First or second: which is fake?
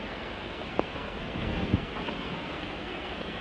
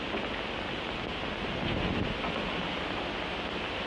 first